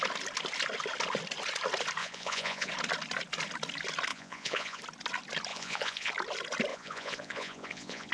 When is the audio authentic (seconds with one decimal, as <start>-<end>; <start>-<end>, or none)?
0.0-2.0; 2.7-4.1; 4.8-5.5; 6.1-6.7